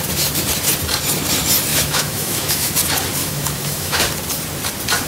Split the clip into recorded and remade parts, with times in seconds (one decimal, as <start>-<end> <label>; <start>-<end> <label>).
0.0-1.7 recorded; 1.7-2.7 remade; 2.7-3.2 recorded; 3.2-4.0 remade; 4.0-5.1 recorded